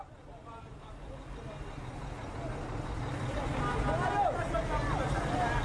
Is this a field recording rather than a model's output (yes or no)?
yes